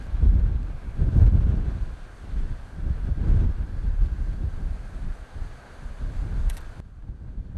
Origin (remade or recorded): recorded